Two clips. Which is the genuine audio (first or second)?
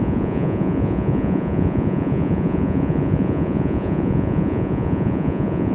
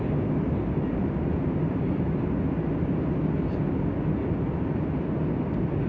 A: second